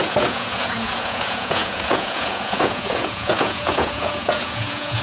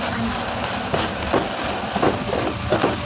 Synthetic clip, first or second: first